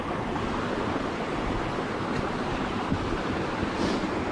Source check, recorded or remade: recorded